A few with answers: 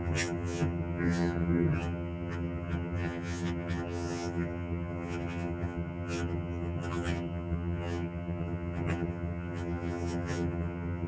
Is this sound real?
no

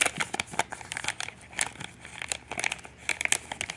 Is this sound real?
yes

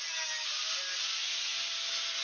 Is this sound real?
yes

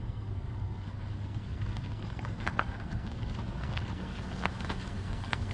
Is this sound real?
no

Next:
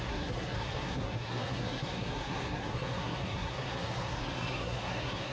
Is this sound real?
no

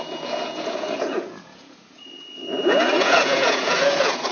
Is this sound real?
no